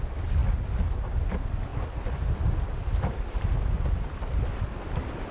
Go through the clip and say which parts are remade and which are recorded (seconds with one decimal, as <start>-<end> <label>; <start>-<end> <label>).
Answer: 0.0-5.3 recorded